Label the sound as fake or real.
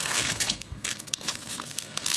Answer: fake